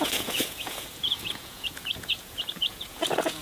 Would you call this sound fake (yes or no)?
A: yes